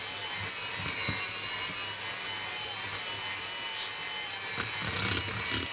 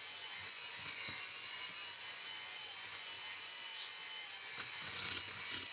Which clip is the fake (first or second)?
second